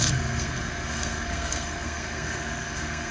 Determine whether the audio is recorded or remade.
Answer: remade